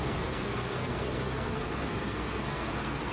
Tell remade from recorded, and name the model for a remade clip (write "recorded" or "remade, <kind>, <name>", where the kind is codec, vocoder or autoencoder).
remade, codec, SNAC